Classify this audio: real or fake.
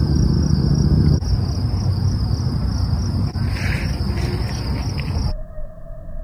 real